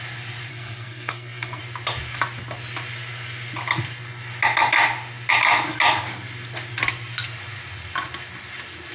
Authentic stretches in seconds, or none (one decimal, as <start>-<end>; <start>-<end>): 0.0-0.5; 1.6-8.9